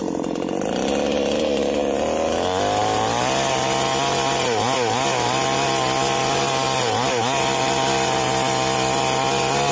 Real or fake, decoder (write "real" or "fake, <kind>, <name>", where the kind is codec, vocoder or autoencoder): real